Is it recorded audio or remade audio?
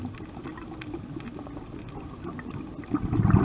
recorded